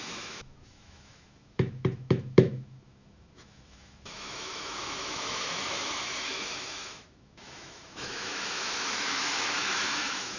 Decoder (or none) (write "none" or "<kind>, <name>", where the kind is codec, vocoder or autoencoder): autoencoder, DAC-VAE